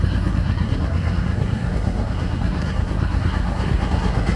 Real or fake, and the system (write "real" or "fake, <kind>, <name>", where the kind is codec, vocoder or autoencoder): fake, codec, SNAC